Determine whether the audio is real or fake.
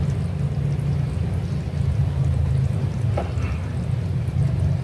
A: real